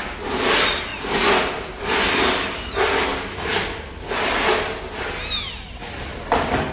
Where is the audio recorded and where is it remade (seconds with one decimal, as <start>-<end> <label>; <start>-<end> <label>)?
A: 0.0-6.7 recorded